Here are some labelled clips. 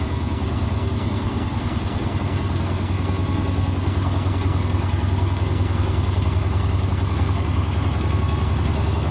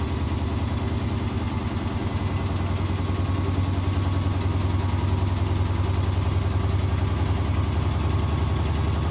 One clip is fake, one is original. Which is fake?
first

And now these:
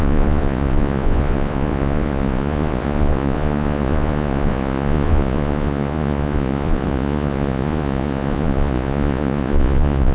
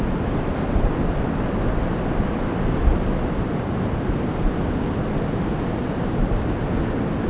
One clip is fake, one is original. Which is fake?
first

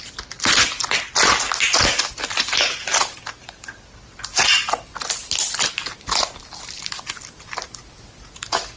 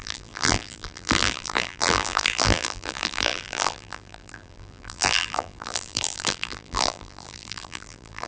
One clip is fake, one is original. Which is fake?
second